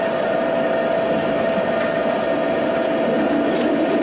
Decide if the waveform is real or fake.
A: real